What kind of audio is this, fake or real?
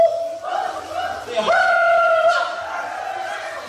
real